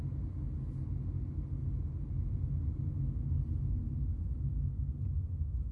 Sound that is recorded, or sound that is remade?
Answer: recorded